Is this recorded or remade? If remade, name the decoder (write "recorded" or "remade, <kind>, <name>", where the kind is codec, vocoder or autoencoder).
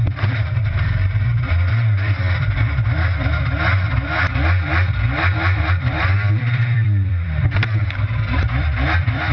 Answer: remade, vocoder, BigVGAN v2